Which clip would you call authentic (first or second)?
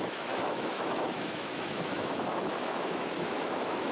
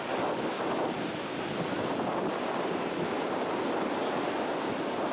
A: second